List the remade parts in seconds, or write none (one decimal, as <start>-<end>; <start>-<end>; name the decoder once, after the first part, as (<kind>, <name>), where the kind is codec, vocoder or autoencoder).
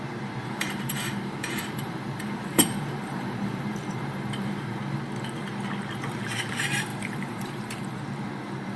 0.4-4.8 (vocoder, BigVGAN v2); 6.9-8.0